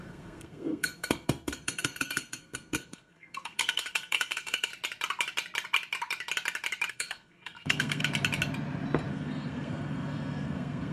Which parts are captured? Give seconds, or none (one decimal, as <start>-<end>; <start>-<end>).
4.7-6.9; 8.0-9.1